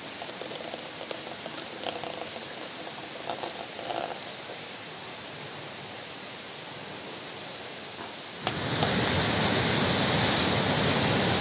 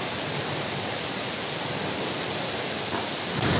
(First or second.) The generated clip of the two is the second